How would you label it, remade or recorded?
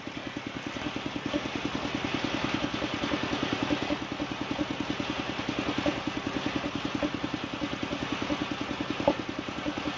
recorded